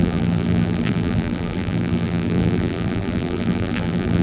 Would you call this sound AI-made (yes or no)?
yes